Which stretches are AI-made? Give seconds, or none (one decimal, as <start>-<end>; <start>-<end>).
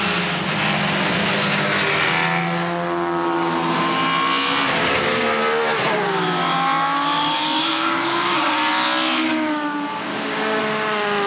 7.7-8.5; 10.1-10.6